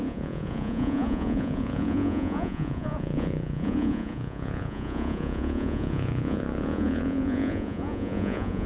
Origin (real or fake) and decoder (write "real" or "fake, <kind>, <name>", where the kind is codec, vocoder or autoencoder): fake, vocoder, Vocos